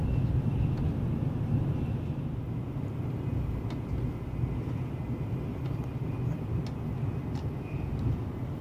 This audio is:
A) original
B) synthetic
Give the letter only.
A